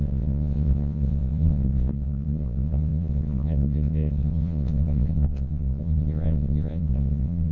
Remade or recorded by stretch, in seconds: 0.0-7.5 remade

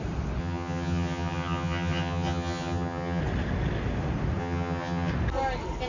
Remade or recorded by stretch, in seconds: 0.0-0.4 recorded; 0.4-3.2 remade; 3.2-4.4 recorded; 4.4-5.1 remade; 5.1-5.9 recorded

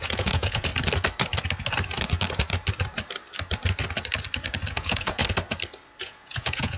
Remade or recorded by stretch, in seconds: 0.0-0.7 remade; 0.7-4.7 recorded; 4.7-5.2 remade; 5.2-6.0 recorded; 6.0-6.8 remade